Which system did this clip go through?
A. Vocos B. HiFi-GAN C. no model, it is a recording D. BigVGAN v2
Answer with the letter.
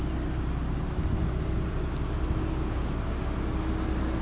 C